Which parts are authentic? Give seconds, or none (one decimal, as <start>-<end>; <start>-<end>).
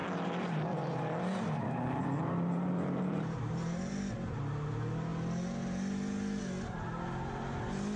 3.9-8.0